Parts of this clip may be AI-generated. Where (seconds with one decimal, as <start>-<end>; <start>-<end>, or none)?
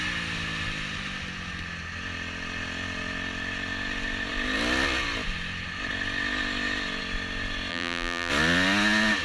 7.7-8.3